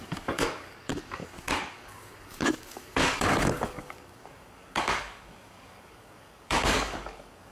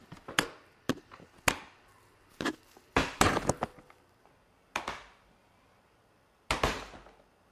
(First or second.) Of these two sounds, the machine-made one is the first